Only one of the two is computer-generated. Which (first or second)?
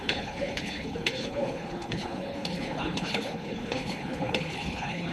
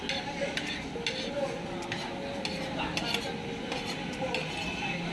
first